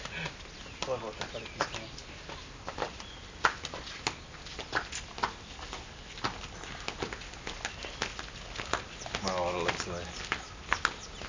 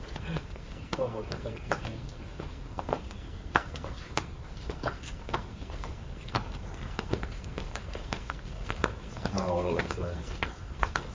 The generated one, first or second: second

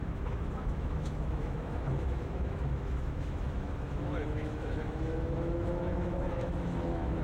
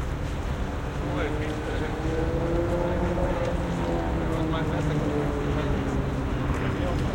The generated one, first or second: first